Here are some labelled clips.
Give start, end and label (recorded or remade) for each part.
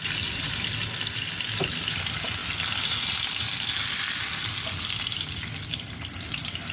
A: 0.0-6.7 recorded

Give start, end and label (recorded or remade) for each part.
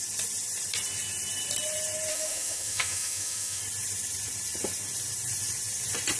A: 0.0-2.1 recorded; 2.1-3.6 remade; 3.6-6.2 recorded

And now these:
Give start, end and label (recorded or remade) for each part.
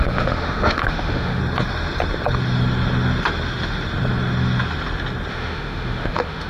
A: 0.0-1.4 remade; 1.4-5.3 recorded; 5.3-6.5 remade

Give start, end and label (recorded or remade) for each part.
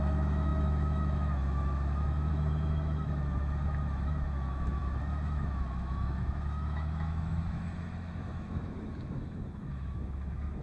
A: 0.0-10.6 remade